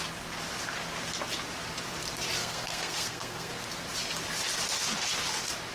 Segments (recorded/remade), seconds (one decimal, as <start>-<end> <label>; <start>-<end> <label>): 0.0-2.4 recorded; 2.4-3.5 remade; 3.5-5.7 recorded